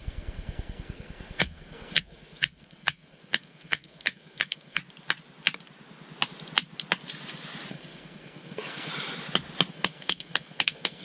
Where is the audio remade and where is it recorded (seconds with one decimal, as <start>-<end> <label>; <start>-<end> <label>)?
0.0-4.8 remade; 4.8-7.7 recorded; 7.7-8.9 remade; 8.9-9.7 recorded; 9.7-11.0 remade